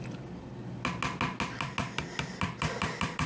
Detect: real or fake real